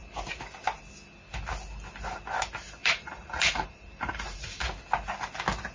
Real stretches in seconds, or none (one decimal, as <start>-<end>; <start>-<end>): 0.0-2.8; 4.6-5.7